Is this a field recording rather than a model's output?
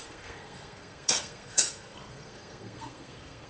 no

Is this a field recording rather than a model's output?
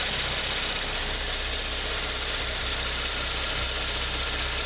yes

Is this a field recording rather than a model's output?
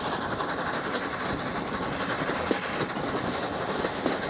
yes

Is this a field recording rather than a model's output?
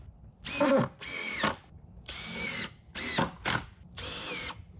yes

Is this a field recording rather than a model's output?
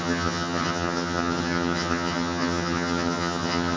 no